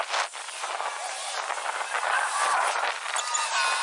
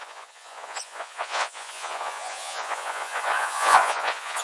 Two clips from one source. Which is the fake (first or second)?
second